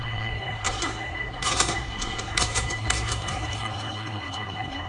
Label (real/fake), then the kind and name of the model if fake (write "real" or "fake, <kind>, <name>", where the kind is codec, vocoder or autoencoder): fake, codec, SNAC